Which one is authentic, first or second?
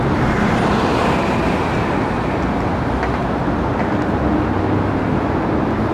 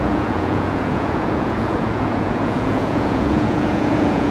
first